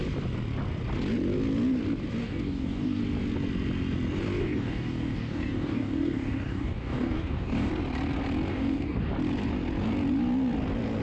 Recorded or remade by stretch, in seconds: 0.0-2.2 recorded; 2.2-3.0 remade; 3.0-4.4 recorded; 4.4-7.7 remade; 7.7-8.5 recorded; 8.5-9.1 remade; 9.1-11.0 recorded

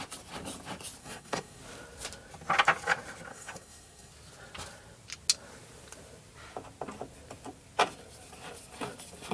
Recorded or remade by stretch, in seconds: 0.0-1.0 recorded; 1.0-1.6 remade; 1.6-3.3 recorded; 3.3-4.1 remade; 4.1-9.3 recorded

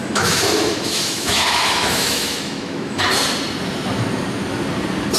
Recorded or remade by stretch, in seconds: 0.0-3.1 remade; 3.1-5.2 recorded

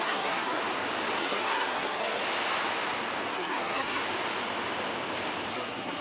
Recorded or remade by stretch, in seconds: 0.0-0.6 remade; 0.6-1.2 recorded; 1.2-2.2 remade; 2.2-3.3 recorded; 3.3-4.0 remade; 4.0-5.5 recorded; 5.5-6.0 remade

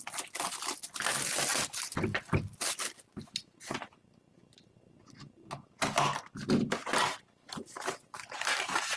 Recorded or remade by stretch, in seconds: 0.0-9.0 recorded

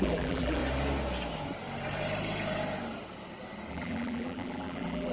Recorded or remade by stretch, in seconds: 0.0-0.6 remade; 0.6-3.7 recorded; 3.7-5.1 remade

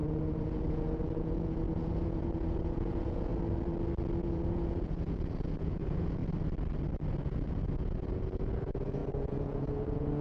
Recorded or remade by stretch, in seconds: 0.0-3.3 remade; 3.3-4.2 recorded; 4.2-6.2 remade; 6.2-7.1 recorded; 7.1-10.2 remade

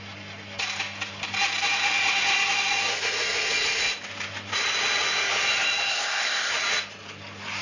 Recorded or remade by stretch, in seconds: 0.0-5.9 recorded; 5.9-6.5 remade; 6.5-7.6 recorded